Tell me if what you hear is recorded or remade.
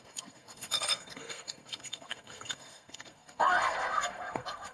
remade